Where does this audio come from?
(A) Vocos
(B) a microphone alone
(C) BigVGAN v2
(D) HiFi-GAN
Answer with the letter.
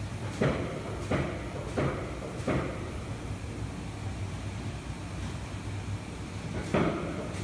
B